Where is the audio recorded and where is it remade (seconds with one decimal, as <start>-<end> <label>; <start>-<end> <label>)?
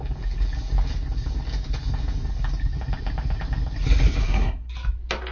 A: 0.0-4.2 recorded; 4.2-4.7 remade; 4.7-5.3 recorded